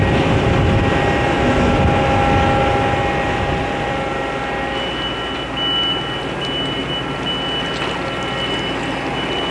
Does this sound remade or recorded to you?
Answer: recorded